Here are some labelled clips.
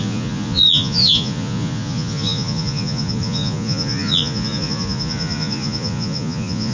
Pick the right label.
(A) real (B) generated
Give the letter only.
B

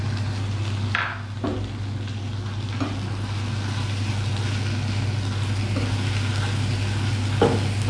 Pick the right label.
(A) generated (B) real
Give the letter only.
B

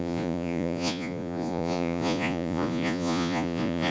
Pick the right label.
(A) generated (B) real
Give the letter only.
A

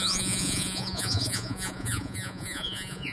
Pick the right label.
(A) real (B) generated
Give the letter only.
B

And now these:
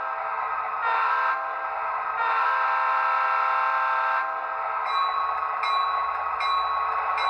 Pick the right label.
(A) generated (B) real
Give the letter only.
B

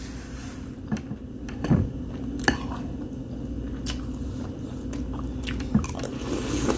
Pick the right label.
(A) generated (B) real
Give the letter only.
B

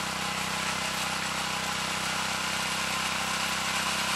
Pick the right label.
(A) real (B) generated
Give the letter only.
A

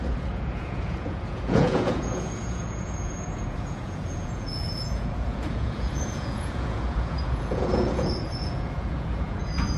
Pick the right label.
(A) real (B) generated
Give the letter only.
B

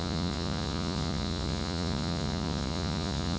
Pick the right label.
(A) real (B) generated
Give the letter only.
B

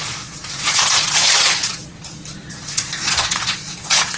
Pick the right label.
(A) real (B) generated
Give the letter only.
B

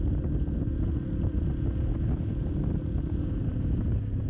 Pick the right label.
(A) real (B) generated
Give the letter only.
A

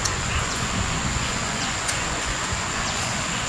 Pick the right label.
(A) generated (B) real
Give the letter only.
A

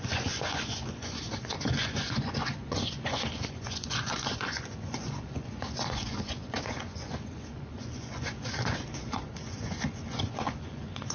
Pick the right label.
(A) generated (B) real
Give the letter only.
A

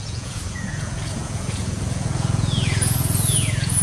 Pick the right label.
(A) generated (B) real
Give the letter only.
A